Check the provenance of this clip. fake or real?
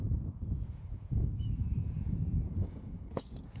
fake